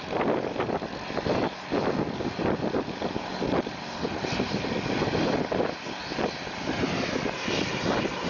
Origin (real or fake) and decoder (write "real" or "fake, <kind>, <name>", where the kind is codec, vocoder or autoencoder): real